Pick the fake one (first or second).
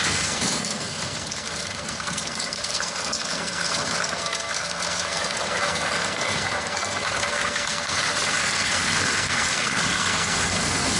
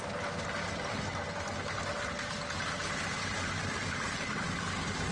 first